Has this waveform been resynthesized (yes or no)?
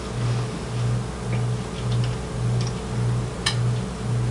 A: no